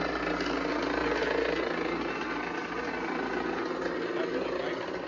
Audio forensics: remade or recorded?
recorded